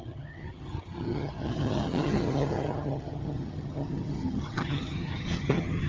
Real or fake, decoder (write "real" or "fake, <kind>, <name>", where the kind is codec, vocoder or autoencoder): fake, vocoder, HiFi-GAN